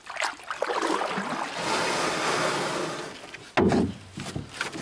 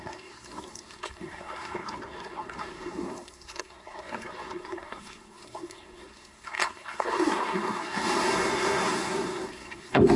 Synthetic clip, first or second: second